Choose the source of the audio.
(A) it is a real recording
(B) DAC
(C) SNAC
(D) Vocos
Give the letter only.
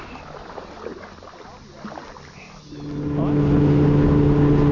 A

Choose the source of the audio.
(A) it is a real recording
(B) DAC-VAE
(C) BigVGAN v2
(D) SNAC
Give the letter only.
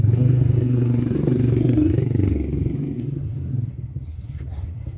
D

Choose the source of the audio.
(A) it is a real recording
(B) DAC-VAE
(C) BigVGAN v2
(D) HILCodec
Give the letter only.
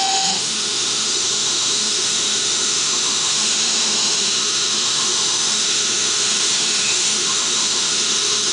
B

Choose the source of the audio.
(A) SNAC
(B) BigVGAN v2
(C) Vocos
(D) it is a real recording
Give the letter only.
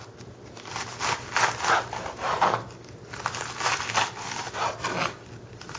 D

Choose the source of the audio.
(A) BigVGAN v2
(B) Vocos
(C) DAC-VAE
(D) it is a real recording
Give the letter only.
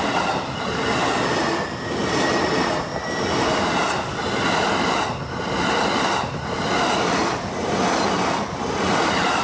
D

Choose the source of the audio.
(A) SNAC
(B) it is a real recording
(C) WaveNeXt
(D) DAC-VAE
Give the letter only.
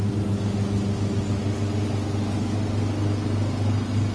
B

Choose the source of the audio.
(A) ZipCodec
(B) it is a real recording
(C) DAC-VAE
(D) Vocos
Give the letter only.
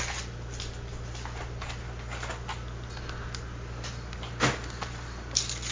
B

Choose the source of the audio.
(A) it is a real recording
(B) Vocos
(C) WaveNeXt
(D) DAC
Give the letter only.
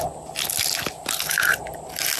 A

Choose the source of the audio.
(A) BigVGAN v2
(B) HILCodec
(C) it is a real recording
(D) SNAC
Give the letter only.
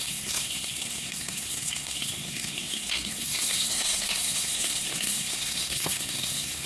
D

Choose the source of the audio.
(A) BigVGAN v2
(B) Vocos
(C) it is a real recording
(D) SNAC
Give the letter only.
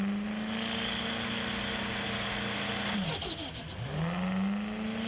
C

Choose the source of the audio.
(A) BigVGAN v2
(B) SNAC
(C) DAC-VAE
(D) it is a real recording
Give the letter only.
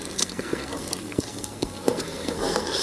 B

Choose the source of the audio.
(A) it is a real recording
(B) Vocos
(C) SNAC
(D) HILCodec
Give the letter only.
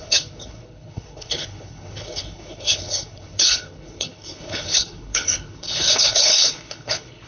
D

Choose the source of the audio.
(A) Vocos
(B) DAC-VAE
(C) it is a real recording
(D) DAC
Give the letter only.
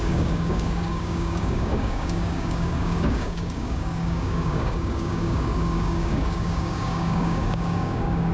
D